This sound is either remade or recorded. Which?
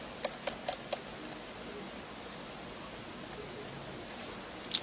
recorded